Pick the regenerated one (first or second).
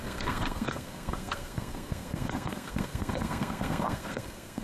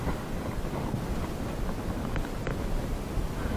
first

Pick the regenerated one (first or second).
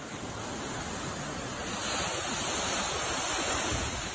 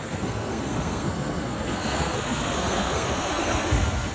second